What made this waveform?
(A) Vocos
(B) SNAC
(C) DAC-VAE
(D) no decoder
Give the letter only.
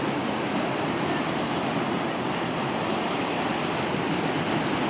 D